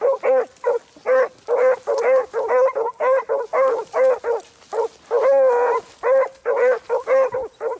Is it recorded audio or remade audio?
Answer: recorded